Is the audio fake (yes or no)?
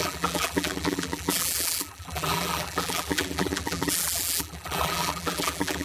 yes